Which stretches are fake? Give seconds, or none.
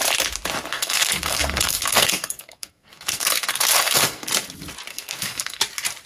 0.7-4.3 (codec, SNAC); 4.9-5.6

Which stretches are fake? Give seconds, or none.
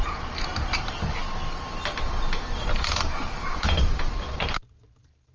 0.0-1.2 (vocoder, BigVGAN v2); 2.0-5.3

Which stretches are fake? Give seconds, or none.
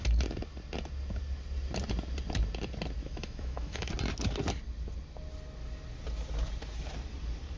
3.0-3.9 (autoencoder, DAC-VAE)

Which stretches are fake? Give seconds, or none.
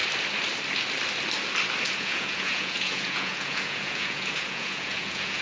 1.8-5.4 (vocoder, Vocos)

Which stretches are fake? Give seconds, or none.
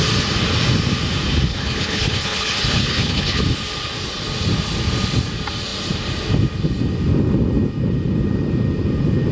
1.5-3.4 (codec, HILCodec)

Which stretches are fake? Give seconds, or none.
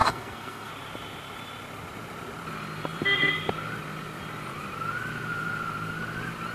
0.0-0.7 (codec, SNAC)